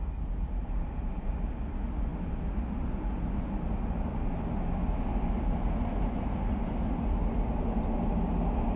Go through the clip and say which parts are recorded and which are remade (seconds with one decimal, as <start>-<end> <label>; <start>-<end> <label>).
0.0-8.8 recorded